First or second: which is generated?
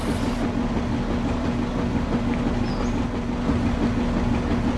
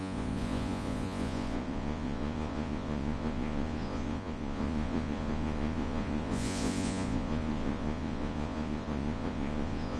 second